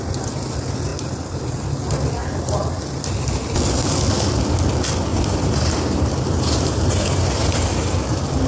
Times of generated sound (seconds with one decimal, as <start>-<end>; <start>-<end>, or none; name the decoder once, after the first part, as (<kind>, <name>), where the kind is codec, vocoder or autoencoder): 5.1-7.6 (vocoder, BigVGAN v2)